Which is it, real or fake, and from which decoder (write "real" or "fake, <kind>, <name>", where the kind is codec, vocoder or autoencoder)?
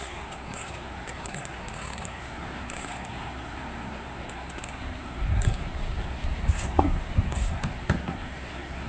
fake, codec, SNAC